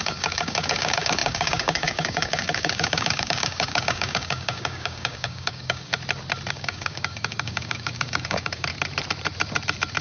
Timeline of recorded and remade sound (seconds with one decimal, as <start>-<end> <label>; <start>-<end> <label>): 0.0-5.9 remade; 5.9-6.5 recorded; 6.5-8.7 remade; 8.7-10.0 recorded